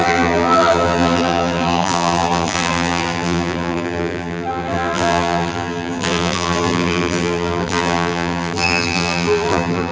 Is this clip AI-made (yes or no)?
yes